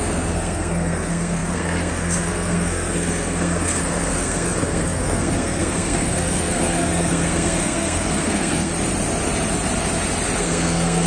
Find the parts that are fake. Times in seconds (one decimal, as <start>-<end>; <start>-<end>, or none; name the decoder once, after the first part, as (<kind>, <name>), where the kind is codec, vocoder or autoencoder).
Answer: 0.0-8.7 (codec, SNAC); 10.4-11.1